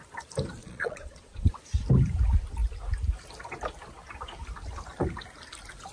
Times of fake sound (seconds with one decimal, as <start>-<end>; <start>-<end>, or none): 0.6-1.5

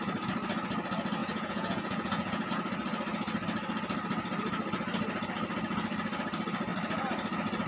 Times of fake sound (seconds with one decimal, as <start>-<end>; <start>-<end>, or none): 1.2-2.5

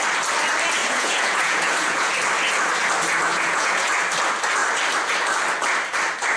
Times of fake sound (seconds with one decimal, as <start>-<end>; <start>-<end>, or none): 0.8-2.1; 3.3-3.9

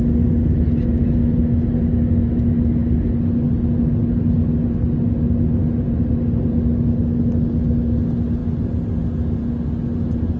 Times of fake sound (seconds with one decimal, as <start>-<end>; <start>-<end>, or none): none

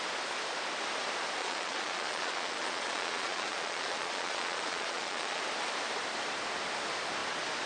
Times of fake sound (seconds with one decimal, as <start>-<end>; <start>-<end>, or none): 1.4-5.4

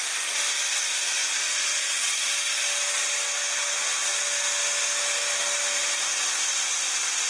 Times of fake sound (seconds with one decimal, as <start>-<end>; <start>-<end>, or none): 1.2-1.9

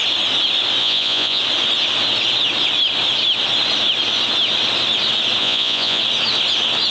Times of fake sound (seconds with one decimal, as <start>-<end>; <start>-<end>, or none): 0.8-1.4; 5.4-6.0